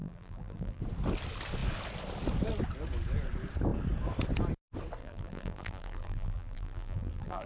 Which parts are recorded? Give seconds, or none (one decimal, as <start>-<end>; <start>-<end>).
0.8-5.0